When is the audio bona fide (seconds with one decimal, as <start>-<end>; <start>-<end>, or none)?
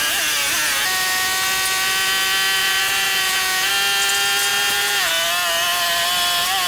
0.0-2.6; 3.7-4.5; 5.1-6.7